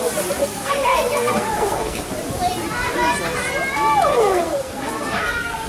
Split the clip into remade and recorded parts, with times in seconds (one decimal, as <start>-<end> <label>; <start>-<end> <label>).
0.0-0.4 recorded; 0.4-2.1 remade; 2.1-4.1 recorded; 4.1-5.7 remade